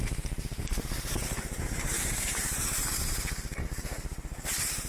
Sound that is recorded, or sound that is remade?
remade